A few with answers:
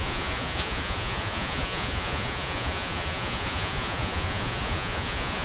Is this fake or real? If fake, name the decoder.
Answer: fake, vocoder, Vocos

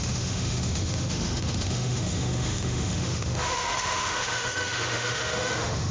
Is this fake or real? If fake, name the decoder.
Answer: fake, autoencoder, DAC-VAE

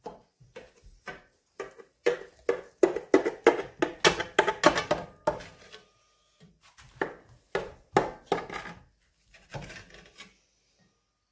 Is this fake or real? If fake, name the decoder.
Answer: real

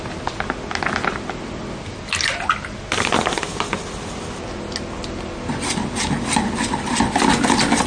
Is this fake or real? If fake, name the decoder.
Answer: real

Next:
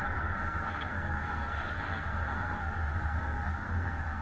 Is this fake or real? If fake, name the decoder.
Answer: fake, codec, SNAC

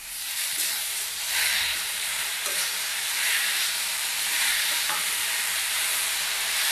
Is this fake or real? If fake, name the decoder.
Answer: fake, vocoder, BigVGAN v2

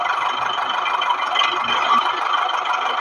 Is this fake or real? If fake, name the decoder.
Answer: real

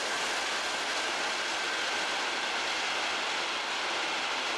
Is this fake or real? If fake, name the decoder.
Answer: real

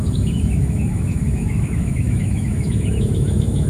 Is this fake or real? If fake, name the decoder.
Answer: fake, autoencoder, DAC-VAE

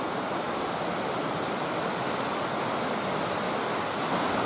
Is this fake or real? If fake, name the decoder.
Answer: real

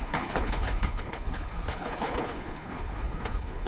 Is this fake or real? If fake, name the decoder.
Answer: fake, codec, HILCodec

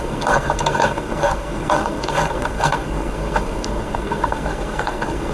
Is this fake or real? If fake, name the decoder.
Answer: fake, codec, SNAC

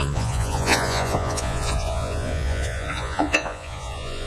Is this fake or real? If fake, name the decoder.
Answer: fake, vocoder, Vocos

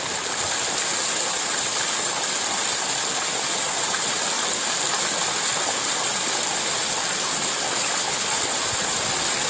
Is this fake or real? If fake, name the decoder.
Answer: real